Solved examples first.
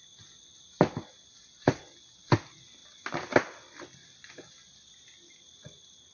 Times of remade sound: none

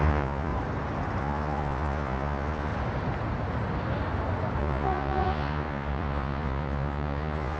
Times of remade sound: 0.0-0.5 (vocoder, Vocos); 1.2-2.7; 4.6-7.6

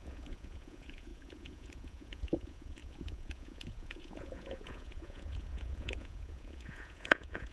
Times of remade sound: 0.0-7.5 (vocoder, Vocos)